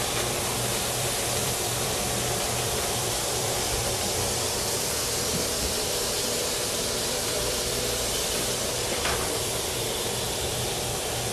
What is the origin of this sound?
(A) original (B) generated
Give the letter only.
B